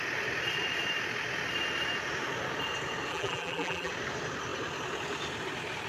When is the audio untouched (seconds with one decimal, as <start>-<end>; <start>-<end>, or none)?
0.0-3.1; 3.9-5.9